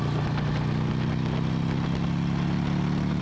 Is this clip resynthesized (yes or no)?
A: no